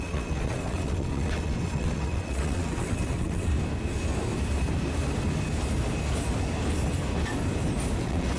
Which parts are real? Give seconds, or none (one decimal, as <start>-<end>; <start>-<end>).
3.5-8.0